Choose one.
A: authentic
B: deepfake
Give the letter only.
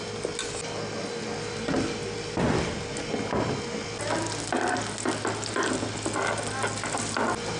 A